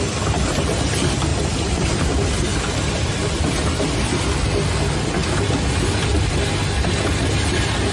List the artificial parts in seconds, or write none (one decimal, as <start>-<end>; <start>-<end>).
1.3-2.1; 2.5-3.4